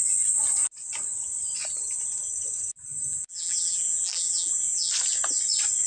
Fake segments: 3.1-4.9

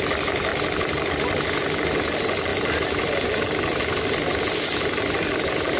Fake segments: 0.5-1.1; 2.5-3.1

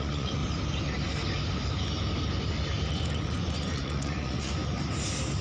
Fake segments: 0.0-0.4; 2.9-4.6